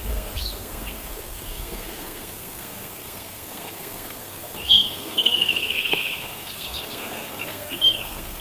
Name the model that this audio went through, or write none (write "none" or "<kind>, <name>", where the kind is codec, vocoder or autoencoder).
codec, SNAC